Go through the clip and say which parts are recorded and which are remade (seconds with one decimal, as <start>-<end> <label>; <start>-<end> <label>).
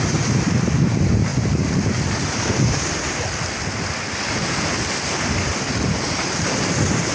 0.0-7.1 recorded